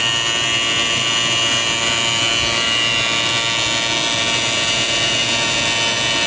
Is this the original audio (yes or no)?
yes